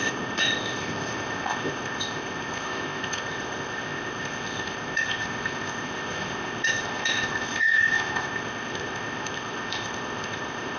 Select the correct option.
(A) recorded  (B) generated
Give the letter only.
B